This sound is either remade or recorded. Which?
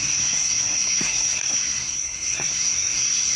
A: remade